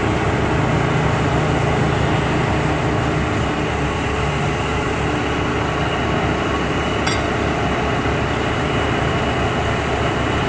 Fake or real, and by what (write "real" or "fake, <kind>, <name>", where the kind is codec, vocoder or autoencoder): real